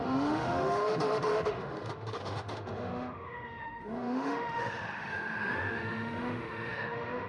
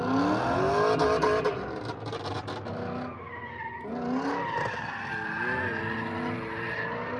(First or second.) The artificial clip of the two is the first